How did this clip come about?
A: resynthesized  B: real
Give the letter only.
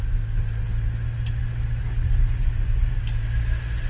B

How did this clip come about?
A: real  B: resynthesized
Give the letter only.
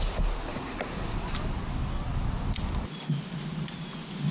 A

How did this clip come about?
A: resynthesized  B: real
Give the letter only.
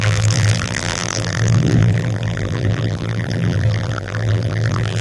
A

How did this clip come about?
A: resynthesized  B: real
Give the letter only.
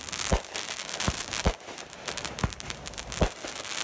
B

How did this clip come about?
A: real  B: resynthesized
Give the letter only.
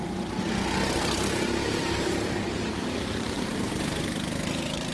B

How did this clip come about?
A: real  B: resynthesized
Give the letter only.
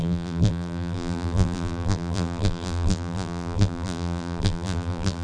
B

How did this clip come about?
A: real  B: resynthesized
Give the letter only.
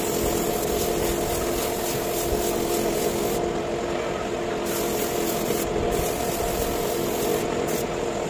A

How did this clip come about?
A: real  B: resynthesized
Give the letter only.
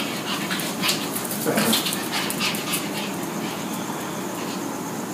A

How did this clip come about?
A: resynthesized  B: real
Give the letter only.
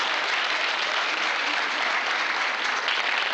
B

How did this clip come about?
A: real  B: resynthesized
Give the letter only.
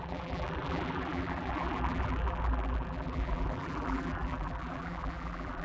B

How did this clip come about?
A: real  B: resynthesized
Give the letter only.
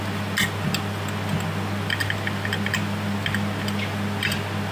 A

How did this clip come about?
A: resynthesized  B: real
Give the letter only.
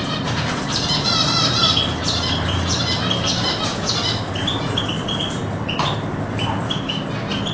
A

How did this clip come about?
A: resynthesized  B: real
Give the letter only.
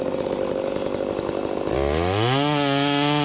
B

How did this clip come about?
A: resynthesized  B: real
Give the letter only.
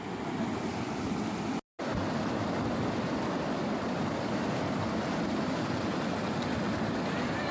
B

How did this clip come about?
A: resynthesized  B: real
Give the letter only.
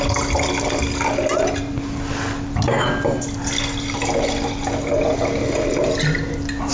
B